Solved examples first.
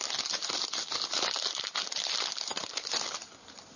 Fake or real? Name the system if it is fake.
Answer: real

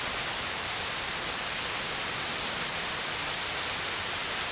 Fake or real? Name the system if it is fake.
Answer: real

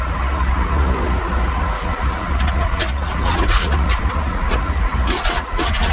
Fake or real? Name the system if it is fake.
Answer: fake, vocoder, Vocos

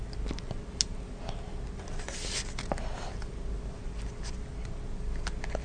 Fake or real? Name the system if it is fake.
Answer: real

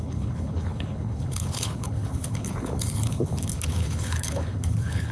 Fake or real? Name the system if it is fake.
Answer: fake, codec, HILCodec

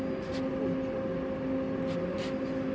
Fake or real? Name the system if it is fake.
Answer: real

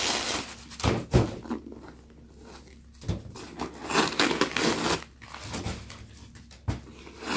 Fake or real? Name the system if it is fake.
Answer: real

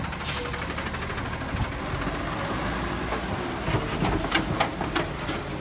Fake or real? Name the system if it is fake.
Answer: real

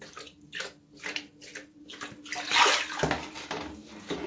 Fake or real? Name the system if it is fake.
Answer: real